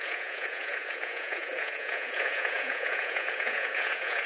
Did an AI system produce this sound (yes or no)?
yes